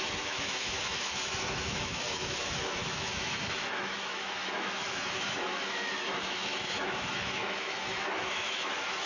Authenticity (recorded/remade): remade